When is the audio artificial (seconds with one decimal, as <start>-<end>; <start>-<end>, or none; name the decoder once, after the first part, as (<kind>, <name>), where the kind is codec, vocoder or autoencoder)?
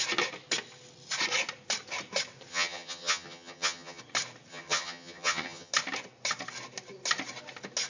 2.5-4.0 (vocoder, HiFi-GAN); 4.5-5.7